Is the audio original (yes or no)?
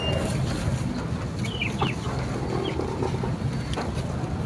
yes